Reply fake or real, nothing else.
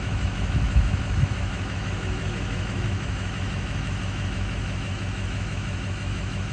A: fake